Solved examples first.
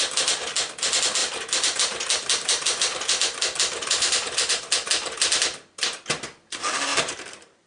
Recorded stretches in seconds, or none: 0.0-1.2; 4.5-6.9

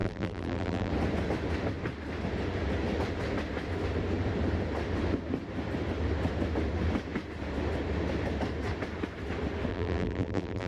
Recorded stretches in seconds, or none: 0.9-9.7